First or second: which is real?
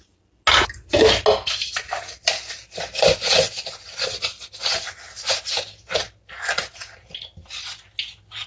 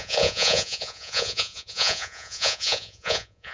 first